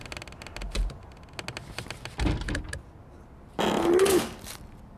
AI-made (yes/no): no